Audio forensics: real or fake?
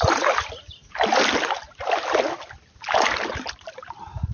real